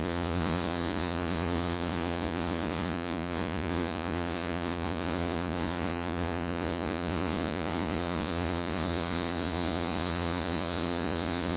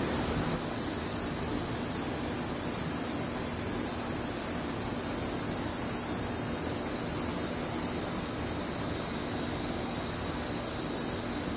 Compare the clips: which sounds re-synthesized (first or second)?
first